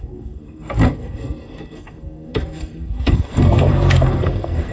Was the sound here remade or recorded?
remade